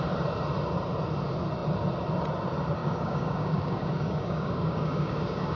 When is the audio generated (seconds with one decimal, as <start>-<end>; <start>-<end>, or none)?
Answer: 2.8-5.6